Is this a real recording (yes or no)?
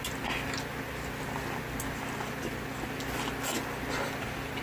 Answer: yes